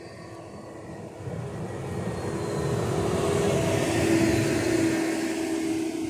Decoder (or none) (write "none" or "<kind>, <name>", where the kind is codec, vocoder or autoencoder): none